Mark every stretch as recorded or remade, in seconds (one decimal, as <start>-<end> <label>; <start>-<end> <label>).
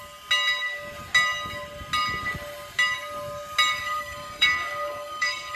0.0-3.7 recorded; 3.7-5.6 remade